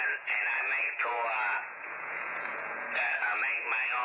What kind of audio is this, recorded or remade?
remade